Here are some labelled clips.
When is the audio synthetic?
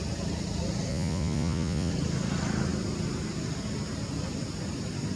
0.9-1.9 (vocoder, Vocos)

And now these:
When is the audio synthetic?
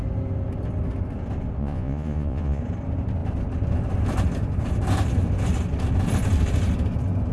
1.6-2.6 (vocoder, Vocos)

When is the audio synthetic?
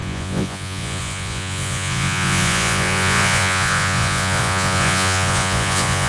0.0-6.1 (vocoder, Vocos)